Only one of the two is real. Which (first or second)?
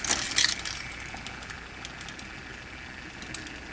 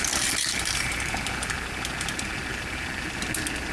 first